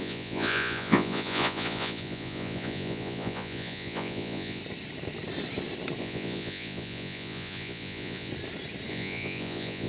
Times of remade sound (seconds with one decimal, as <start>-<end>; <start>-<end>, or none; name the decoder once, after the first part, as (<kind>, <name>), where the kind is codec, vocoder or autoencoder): 0.0-4.6 (vocoder, Vocos); 6.0-8.3; 8.9-9.9